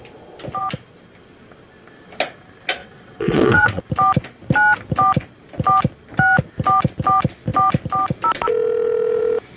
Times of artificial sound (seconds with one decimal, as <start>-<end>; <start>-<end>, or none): 2.8-3.8